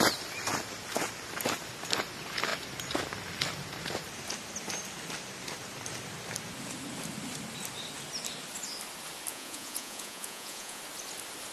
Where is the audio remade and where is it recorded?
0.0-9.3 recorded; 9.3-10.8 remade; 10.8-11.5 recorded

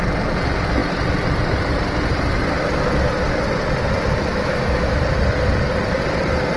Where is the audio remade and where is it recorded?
0.0-4.3 recorded; 4.3-5.0 remade; 5.0-6.6 recorded

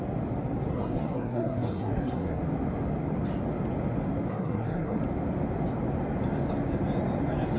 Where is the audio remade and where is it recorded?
0.0-0.7 recorded; 0.7-2.4 remade; 2.4-4.3 recorded; 4.3-5.0 remade; 5.0-7.6 recorded

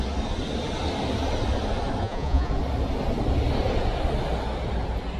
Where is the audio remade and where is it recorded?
0.0-2.0 recorded; 2.0-2.5 remade; 2.5-5.2 recorded

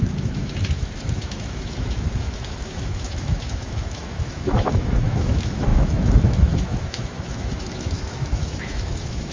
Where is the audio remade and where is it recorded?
0.0-9.3 remade